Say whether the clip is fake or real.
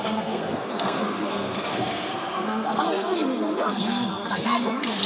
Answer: fake